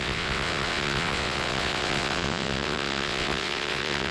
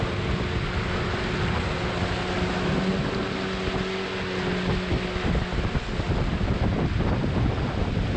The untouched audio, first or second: second